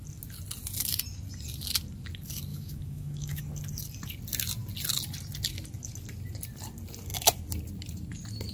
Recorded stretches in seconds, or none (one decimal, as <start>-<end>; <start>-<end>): 0.0-2.5; 3.4-8.5